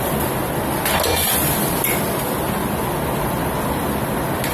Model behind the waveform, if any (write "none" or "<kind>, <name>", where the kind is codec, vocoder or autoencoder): none